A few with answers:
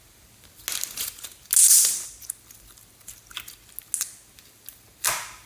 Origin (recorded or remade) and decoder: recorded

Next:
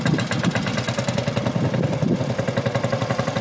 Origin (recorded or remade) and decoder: recorded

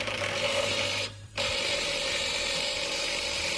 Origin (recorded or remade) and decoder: remade, vocoder, BigVGAN v2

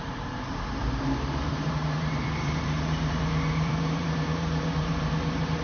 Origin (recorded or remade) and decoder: remade, vocoder, BigVGAN v2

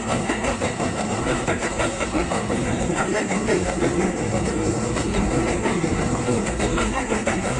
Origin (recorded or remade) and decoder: remade, codec, SNAC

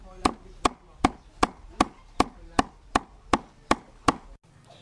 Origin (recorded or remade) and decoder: recorded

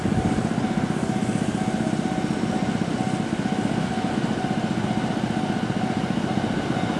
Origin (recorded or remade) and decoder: recorded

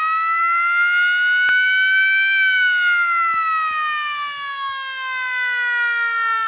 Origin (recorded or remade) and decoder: recorded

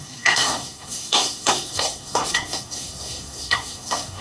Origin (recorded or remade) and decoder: remade, codec, SNAC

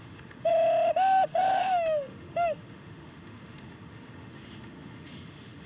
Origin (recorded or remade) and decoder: remade, autoencoder, DAC-VAE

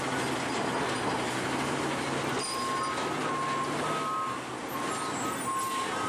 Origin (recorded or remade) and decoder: recorded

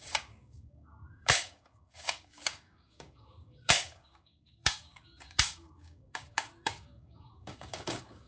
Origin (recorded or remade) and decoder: remade, codec, DAC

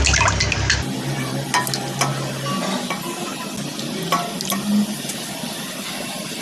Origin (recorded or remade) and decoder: recorded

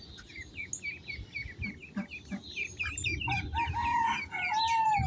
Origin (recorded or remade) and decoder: recorded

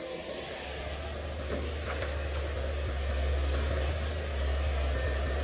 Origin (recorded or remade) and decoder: recorded